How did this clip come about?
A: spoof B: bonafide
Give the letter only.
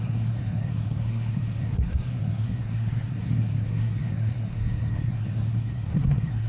A